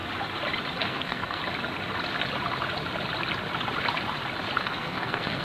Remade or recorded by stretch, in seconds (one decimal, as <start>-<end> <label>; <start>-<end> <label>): 0.0-0.8 recorded; 0.8-1.4 remade; 1.4-4.6 recorded; 4.6-5.4 remade